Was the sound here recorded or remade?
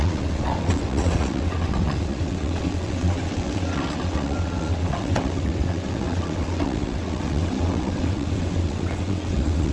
remade